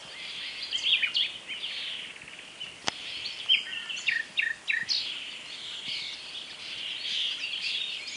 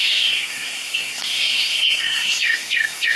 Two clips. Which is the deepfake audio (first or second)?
second